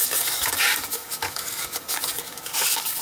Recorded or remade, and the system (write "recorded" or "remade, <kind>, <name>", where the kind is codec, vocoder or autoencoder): remade, codec, DAC